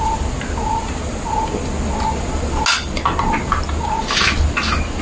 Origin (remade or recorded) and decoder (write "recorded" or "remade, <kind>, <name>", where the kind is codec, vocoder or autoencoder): recorded